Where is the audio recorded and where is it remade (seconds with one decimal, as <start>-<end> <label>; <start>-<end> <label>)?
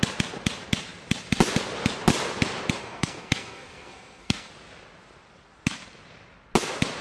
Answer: 0.0-2.8 recorded; 2.8-4.5 remade; 4.5-7.0 recorded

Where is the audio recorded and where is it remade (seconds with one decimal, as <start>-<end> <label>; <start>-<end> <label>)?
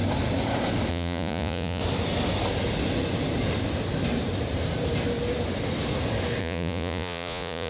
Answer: 0.0-0.9 recorded; 0.9-1.8 remade; 1.8-6.4 recorded; 6.4-7.7 remade